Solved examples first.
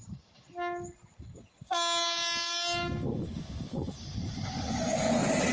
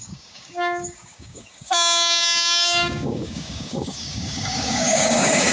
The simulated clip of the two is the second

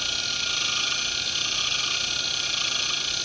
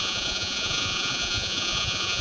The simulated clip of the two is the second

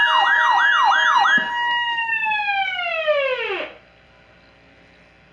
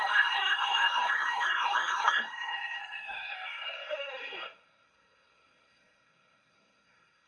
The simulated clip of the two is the second